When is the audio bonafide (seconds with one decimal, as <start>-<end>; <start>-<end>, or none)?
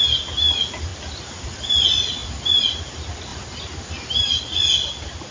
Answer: 0.0-5.3